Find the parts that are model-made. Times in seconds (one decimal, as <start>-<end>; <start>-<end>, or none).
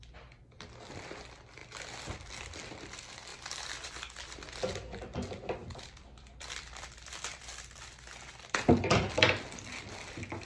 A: 3.3-4.0; 5.6-7.4